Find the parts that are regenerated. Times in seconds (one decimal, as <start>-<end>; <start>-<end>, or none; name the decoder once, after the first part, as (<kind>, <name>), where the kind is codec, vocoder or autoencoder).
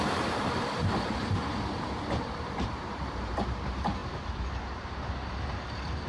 0.0-6.1 (vocoder, BigVGAN v2)